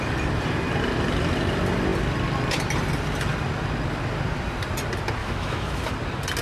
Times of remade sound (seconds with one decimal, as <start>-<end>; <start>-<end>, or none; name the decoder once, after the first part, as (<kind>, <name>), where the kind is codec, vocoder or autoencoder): 5.2-5.9 (autoencoder, DAC-VAE)